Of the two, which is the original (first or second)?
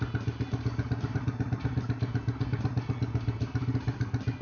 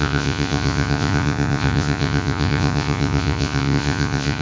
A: first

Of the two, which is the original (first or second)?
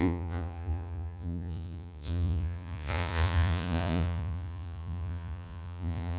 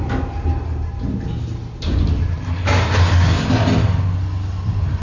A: second